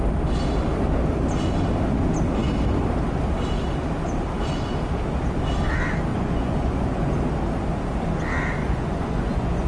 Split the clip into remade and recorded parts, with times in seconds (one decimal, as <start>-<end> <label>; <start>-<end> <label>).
0.0-6.1 recorded; 6.1-7.1 remade; 7.1-8.6 recorded; 8.6-9.7 remade